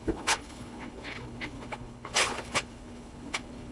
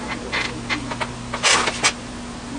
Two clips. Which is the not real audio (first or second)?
first